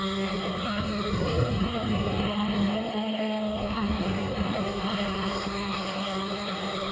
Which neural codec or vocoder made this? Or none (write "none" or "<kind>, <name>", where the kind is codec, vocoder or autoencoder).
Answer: codec, SNAC